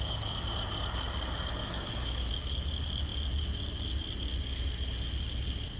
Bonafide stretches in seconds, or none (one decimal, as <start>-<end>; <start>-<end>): 0.0-1.6; 2.3-5.8

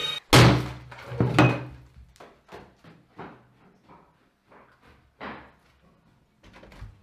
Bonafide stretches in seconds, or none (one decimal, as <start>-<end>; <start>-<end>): 0.0-7.0